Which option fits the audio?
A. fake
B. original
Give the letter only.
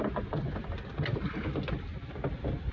B